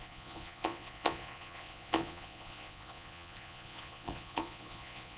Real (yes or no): no